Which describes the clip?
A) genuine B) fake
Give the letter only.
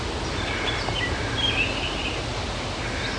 A